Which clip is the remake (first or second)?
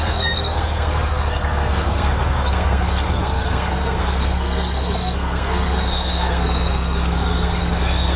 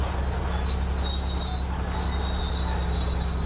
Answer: first